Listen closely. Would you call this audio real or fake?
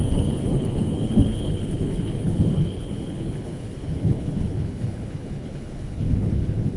fake